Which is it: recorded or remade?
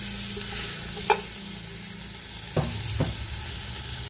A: recorded